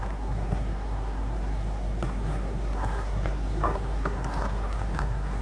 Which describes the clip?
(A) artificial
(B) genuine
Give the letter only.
A